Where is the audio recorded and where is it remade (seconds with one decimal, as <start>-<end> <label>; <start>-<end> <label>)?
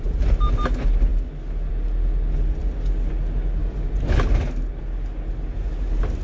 0.0-6.2 recorded